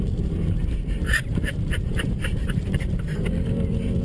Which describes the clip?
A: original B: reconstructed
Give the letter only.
B